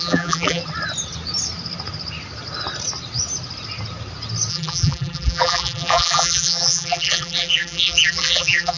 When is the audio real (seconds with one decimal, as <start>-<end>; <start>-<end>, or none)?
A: 0.6-4.5